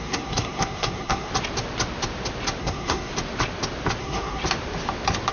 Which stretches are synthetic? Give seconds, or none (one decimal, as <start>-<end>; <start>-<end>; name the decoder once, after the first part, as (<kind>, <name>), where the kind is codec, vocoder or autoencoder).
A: 0.0-1.3 (codec, SNAC); 2.6-3.1; 4.0-4.4